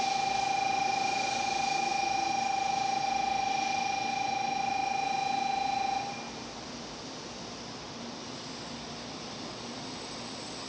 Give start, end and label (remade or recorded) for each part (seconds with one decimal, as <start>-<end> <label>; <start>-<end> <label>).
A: 0.0-10.7 recorded